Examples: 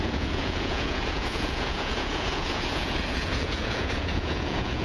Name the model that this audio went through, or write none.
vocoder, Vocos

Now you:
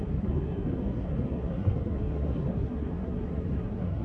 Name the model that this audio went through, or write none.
codec, SNAC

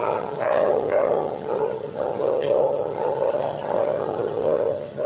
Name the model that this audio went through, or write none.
vocoder, HiFi-GAN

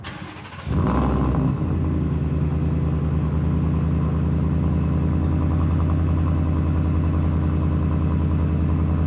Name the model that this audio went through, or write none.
none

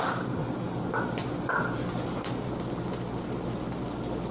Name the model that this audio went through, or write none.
none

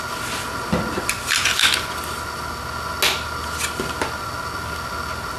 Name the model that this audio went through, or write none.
none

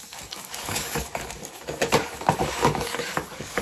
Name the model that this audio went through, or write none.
codec, DAC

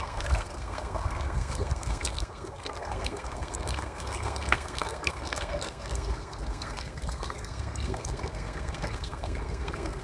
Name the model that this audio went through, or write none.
codec, SNAC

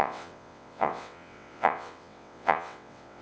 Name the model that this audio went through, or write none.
vocoder, WaveNeXt